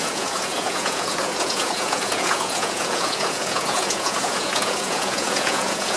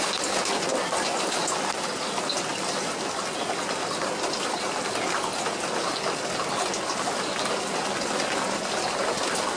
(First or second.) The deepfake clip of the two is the first